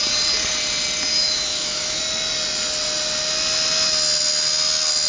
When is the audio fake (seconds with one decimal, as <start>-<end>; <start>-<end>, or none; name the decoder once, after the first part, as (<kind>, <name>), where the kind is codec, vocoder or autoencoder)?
1.1-2.0 (autoencoder, DAC-VAE)